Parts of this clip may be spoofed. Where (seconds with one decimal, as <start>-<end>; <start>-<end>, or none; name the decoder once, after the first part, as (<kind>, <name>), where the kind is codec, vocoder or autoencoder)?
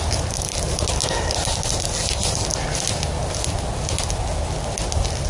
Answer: none